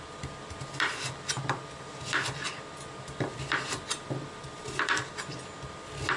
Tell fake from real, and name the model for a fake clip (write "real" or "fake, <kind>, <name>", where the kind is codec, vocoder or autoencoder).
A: real